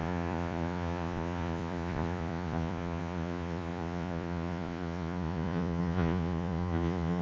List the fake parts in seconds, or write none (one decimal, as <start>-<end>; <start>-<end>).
0.0-7.2